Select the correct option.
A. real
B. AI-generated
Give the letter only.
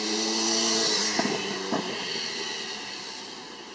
A